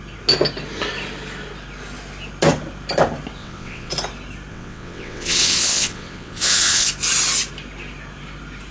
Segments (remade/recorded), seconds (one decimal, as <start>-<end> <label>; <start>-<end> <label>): 0.0-3.4 recorded; 3.4-3.9 remade; 3.9-4.5 recorded; 4.5-6.9 remade; 6.9-8.7 recorded